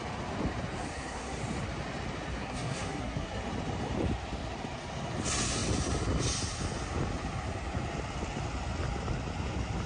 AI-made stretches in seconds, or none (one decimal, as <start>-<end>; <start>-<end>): 0.9-1.4; 2.4-3.4